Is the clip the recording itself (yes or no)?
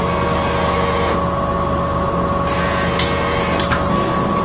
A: yes